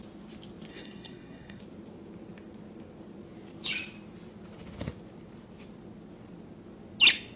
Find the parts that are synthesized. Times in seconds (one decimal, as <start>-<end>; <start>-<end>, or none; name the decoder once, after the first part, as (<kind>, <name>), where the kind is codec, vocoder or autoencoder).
0.7-1.6 (codec, SNAC)